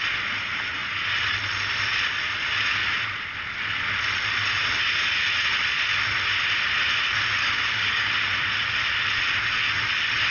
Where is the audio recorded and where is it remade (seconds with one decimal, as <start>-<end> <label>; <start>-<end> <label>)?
0.0-7.4 recorded; 7.4-8.1 remade; 8.1-10.3 recorded